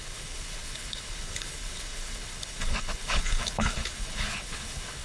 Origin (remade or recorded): remade